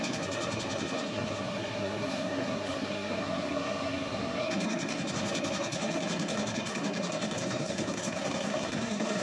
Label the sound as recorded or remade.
remade